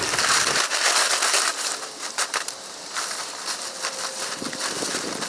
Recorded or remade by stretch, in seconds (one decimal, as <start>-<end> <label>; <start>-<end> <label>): 0.0-1.5 recorded; 1.5-4.1 remade; 4.1-5.3 recorded